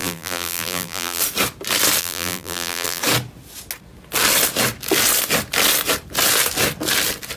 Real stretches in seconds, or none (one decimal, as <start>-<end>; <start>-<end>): 1.2-2.0; 3.0-7.4